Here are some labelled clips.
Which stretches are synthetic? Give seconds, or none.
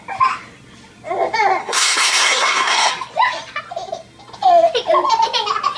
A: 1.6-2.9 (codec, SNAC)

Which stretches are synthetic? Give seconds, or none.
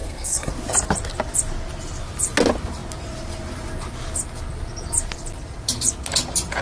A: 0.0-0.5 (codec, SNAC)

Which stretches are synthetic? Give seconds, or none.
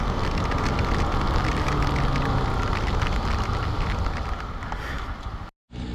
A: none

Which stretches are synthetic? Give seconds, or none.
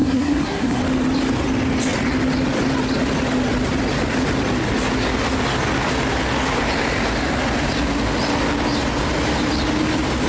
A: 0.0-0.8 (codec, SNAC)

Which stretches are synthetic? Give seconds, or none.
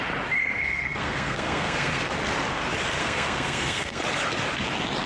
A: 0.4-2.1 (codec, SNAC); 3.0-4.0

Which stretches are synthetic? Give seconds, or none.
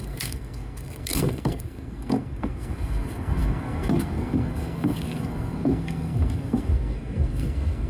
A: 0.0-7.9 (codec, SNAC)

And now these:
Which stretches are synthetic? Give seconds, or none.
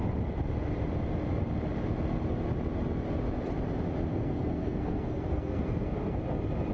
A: 4.1-6.2 (codec, SNAC)